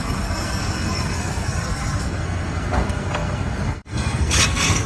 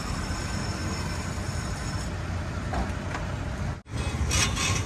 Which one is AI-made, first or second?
first